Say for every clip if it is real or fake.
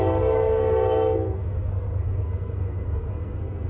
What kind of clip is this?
fake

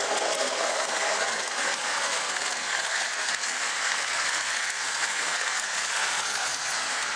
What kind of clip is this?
fake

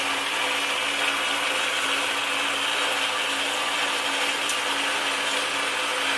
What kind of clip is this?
real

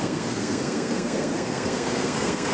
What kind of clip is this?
fake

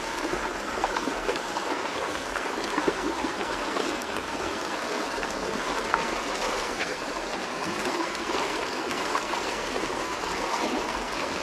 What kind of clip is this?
fake